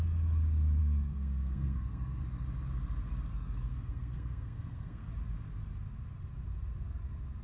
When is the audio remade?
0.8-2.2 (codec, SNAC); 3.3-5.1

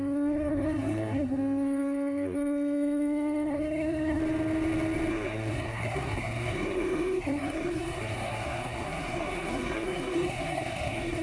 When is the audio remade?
0.0-4.2 (codec, SNAC); 5.1-11.2

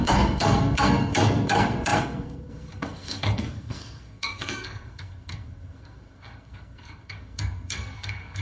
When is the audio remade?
0.0-8.4 (codec, SNAC)

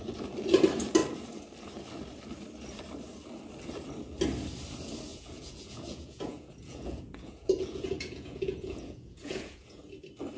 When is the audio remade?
5.1-9.8 (vocoder, Vocos)

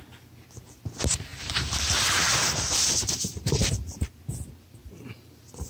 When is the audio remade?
1.3-4.2 (vocoder, BigVGAN v2); 4.8-5.7